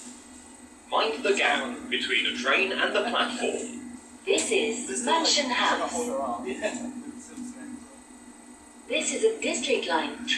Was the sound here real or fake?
real